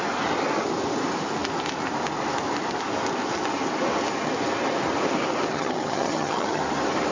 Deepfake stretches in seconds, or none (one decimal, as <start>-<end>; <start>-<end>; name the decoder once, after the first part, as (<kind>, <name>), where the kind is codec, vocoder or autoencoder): 5.5-6.6 (vocoder, HiFi-GAN)